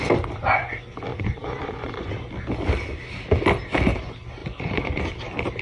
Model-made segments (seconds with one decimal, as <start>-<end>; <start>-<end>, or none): 1.1-2.1; 4.4-5.0